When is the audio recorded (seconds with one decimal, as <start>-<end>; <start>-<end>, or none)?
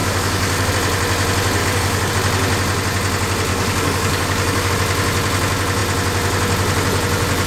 0.7-1.6; 2.1-3.5; 4.7-7.5